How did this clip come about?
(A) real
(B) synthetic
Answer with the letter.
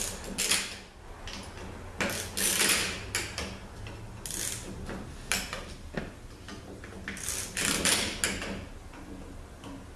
A